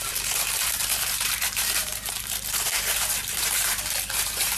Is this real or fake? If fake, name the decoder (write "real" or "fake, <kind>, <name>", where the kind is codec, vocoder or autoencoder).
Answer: fake, vocoder, BigVGAN v2